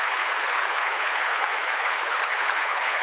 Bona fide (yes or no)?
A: no